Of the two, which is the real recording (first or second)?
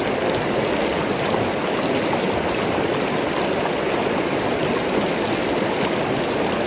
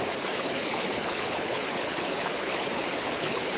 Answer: first